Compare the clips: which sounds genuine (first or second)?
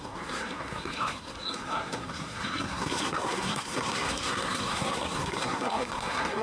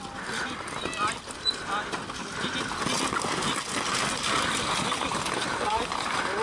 second